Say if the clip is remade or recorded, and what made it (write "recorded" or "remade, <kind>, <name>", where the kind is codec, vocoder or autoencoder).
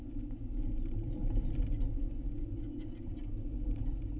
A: recorded